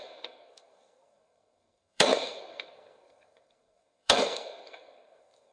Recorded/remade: remade